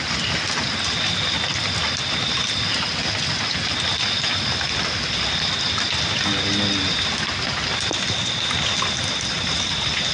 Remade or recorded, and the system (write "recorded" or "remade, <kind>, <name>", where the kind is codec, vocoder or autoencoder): recorded